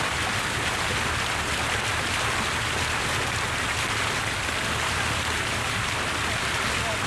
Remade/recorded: recorded